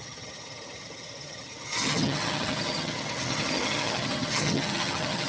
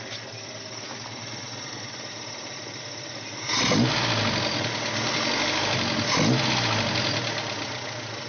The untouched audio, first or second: second